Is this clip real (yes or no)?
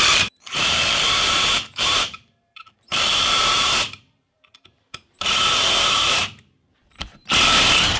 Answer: no